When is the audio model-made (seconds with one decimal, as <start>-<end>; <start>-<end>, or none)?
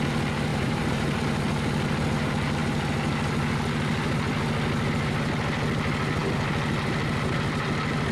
0.5-1.2